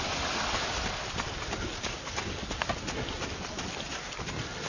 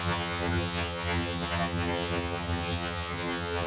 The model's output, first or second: second